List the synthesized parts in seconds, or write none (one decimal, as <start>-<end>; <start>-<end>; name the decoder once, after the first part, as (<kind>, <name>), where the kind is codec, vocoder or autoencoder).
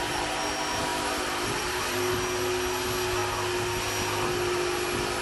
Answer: 0.9-2.1 (vocoder, BigVGAN v2)